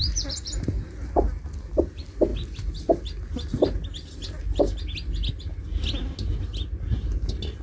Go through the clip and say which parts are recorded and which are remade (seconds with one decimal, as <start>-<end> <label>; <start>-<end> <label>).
0.0-7.6 recorded